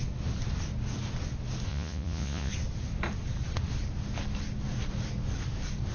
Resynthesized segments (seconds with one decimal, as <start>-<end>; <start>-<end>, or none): 1.7-2.5